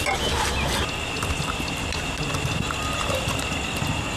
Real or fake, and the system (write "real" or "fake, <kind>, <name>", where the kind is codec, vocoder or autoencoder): real